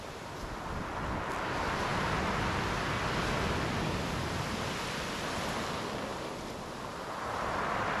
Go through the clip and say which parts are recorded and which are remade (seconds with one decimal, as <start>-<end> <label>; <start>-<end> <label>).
0.0-6.1 recorded; 6.1-8.0 remade